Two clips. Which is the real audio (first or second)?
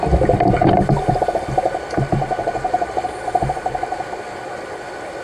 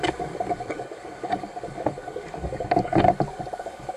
first